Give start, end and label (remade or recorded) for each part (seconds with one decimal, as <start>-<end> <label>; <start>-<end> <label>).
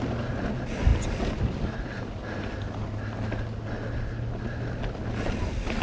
0.0-5.8 recorded